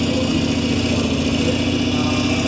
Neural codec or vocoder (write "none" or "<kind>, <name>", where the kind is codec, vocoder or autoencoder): none